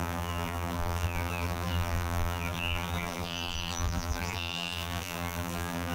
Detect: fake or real fake